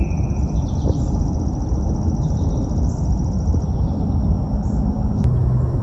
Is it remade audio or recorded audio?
recorded